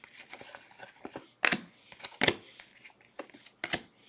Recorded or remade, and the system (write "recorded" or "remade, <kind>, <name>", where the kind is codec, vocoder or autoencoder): recorded